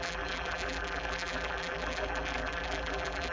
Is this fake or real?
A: fake